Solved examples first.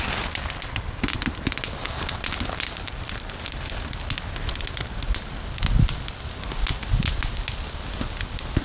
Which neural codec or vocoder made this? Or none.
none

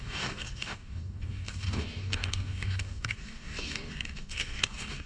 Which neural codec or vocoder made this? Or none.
codec, DAC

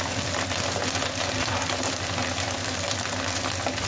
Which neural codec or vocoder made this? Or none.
none